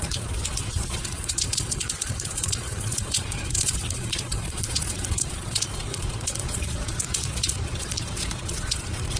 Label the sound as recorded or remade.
remade